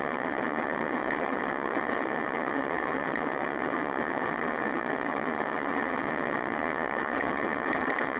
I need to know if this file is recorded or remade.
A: remade